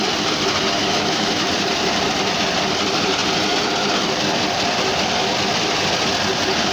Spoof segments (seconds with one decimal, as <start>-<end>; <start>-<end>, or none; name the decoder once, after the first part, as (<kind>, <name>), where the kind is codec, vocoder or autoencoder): 0.8-1.5 (autoencoder, DAC-VAE)